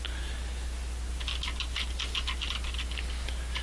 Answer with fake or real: real